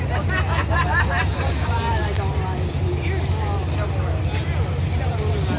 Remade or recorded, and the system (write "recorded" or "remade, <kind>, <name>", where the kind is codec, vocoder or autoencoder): recorded